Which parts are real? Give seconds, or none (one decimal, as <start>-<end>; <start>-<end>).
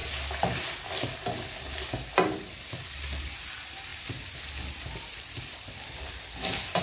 0.0-6.8